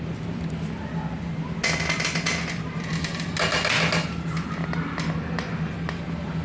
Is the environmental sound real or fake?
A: real